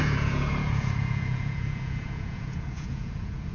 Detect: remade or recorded remade